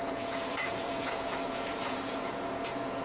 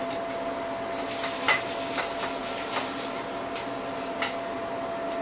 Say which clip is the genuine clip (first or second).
second